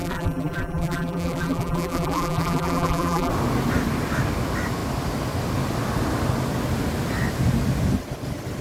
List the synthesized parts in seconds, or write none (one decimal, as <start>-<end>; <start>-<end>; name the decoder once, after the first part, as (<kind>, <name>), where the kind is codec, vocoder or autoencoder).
0.0-3.3 (vocoder, BigVGAN v2)